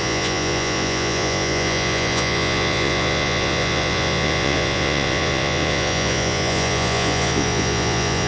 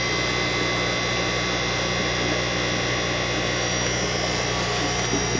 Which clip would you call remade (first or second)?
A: first